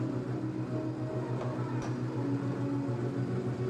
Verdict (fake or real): real